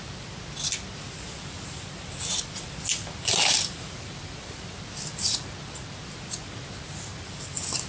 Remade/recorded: recorded